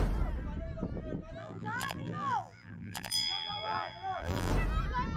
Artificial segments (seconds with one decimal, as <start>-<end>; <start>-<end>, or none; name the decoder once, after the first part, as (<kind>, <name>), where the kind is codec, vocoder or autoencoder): 1.4-4.5 (vocoder, BigVGAN v2)